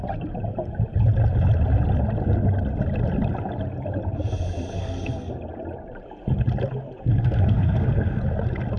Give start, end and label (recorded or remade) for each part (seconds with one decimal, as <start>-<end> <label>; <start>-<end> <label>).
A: 0.0-4.7 recorded; 4.7-5.3 remade; 5.3-7.1 recorded; 7.1-8.2 remade; 8.2-8.8 recorded